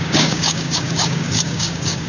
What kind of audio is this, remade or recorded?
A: remade